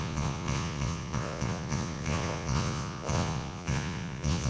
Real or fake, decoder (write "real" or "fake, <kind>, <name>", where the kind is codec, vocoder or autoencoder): fake, vocoder, Vocos